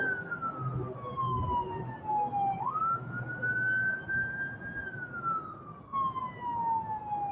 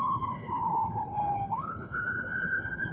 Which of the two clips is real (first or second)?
first